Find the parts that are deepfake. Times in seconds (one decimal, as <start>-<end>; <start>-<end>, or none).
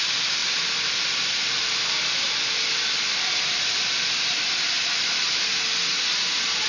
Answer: 0.4-4.4